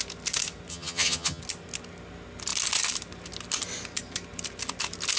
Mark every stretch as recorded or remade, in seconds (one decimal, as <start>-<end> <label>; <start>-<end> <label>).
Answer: 0.0-0.7 recorded; 0.7-1.4 remade; 1.4-5.2 recorded